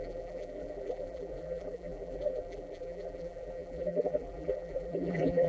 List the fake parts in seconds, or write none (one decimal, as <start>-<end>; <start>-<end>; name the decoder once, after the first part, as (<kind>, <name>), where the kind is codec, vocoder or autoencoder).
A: 0.0-5.5 (vocoder, BigVGAN v2)